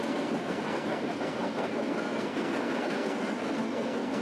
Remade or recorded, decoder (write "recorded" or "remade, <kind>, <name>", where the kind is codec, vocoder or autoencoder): remade, codec, SNAC